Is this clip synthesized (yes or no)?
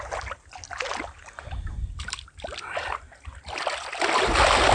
no